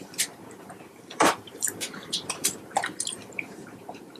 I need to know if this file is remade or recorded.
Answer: remade